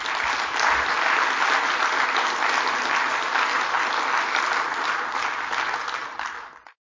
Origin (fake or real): real